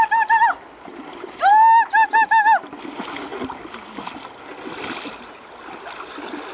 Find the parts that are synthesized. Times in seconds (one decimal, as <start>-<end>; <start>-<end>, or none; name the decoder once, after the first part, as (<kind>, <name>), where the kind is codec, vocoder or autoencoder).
none